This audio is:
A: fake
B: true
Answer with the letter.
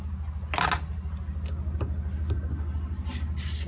B